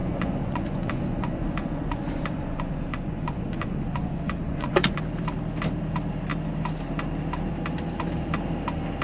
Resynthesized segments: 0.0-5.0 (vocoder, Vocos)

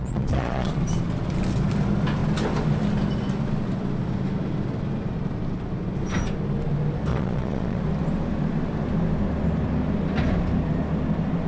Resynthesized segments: 0.0-0.8 (vocoder, Vocos); 7.1-7.8